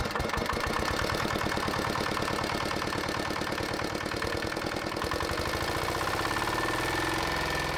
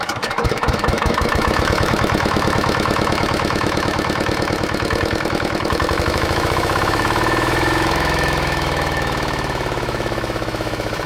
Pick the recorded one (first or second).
first